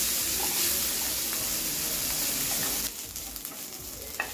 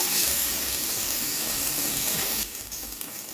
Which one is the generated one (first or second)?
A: second